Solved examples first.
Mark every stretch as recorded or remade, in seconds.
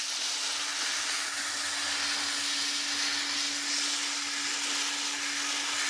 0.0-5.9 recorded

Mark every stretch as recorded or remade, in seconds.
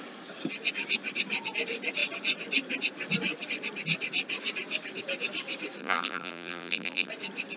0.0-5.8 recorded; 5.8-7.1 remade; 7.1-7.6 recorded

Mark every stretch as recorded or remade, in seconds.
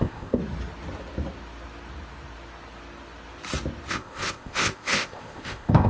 0.0-0.4 remade; 0.4-3.9 recorded; 3.9-5.9 remade